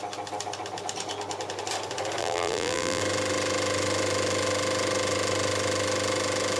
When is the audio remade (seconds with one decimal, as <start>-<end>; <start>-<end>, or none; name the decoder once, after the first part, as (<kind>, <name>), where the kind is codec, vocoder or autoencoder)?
2.2-3.0 (vocoder, BigVGAN v2)